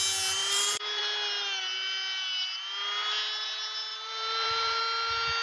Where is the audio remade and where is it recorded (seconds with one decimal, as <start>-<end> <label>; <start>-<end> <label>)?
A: 0.0-0.4 recorded; 0.4-1.0 remade; 1.0-3.9 recorded; 3.9-4.8 remade; 4.8-5.4 recorded